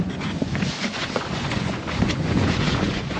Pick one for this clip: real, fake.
fake